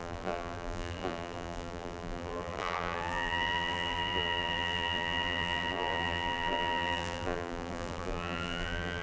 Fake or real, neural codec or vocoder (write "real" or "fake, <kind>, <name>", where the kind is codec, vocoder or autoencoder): fake, vocoder, BigVGAN v2